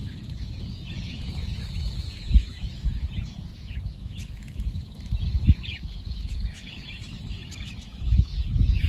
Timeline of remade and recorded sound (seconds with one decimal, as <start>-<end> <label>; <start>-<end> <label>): 0.0-8.9 remade

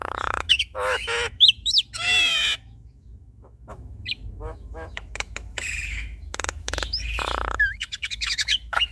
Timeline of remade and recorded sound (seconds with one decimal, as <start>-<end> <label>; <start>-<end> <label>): 0.0-8.9 remade

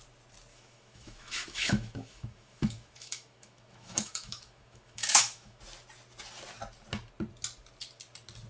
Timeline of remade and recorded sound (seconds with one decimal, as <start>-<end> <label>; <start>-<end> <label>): 0.0-0.5 recorded; 0.5-5.6 remade; 5.6-8.5 recorded

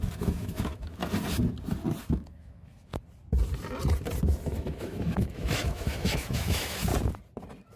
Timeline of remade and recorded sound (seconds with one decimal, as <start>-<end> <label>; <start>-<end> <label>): 0.0-1.0 remade; 1.0-2.0 recorded; 2.0-2.9 remade; 2.9-4.2 recorded; 4.2-6.9 remade; 6.9-7.8 recorded

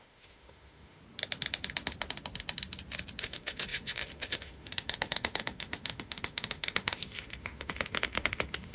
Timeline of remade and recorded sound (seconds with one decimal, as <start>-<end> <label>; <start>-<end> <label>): 0.0-1.0 remade; 1.0-3.2 recorded; 3.2-8.7 remade

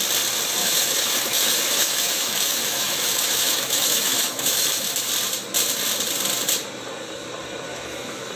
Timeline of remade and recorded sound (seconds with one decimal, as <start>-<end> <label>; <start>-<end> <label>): 0.0-0.6 recorded; 0.6-5.1 remade; 5.1-7.7 recorded; 7.7-8.3 remade

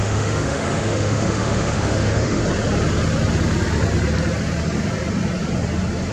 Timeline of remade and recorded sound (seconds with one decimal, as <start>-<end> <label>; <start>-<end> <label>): 0.0-2.4 remade; 2.4-6.1 recorded